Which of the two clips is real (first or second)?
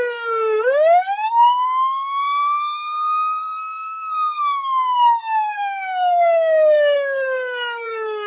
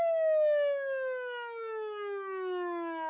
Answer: second